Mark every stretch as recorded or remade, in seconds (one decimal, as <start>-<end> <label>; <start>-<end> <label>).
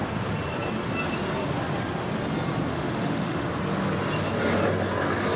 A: 0.0-2.7 recorded; 2.7-3.5 remade; 3.5-5.4 recorded